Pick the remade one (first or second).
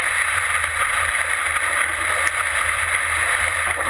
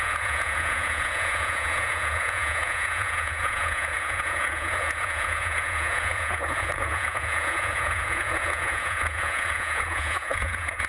second